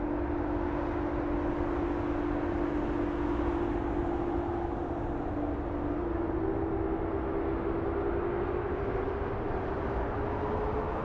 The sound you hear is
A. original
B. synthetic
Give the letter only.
A